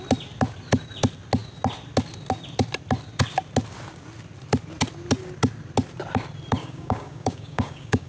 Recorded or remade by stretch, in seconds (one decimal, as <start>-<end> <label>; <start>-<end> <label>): 0.0-6.6 recorded; 6.6-8.1 remade